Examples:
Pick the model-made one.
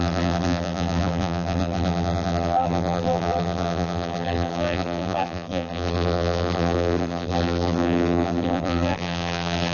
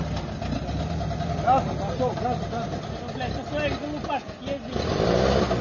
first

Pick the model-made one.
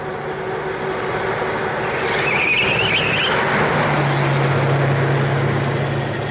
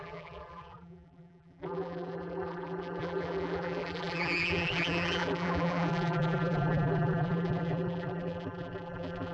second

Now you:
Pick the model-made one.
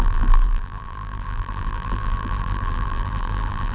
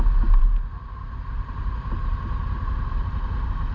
first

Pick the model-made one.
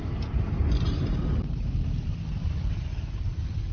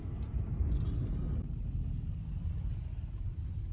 first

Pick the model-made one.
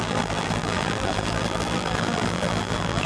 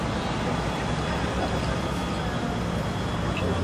first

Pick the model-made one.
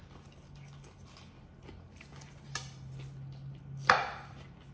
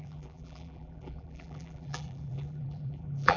second